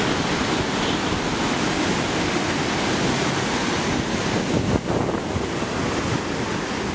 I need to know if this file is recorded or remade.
recorded